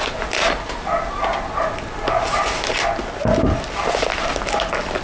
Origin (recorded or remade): recorded